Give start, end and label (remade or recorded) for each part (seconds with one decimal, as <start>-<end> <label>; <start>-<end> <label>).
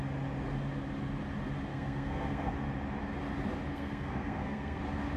0.0-1.7 recorded; 1.7-2.5 remade; 2.5-3.7 recorded; 3.7-4.8 remade; 4.8-5.2 recorded